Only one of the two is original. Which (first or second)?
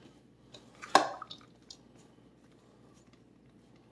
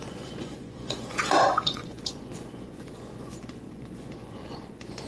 first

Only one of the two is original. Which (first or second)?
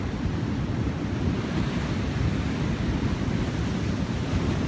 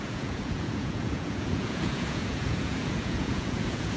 first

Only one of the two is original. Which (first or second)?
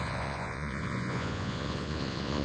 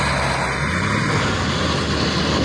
second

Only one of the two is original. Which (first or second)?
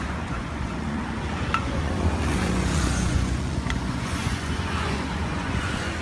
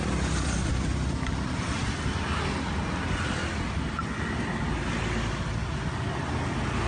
second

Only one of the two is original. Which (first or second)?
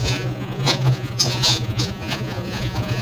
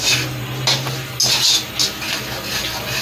second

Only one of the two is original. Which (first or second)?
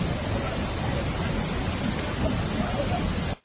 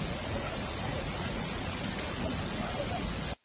first